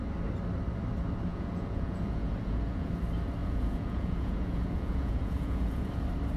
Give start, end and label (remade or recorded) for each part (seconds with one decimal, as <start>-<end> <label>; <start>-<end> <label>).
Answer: 0.0-1.3 recorded; 1.3-2.9 remade; 2.9-3.4 recorded; 3.4-5.9 remade; 5.9-6.4 recorded